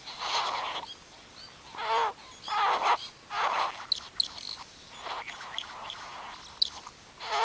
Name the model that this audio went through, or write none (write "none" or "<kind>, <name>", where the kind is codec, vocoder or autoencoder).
none